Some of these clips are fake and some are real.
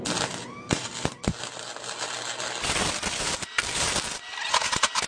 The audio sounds real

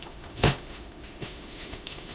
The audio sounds fake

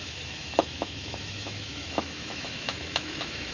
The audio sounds fake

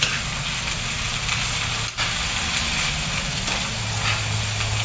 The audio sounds real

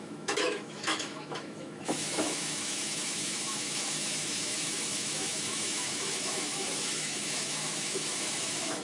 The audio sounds fake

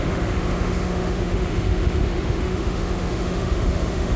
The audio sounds fake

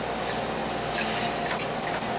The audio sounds real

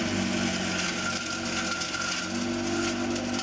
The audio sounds real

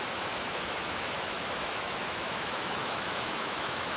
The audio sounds fake